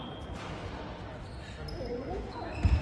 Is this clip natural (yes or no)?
yes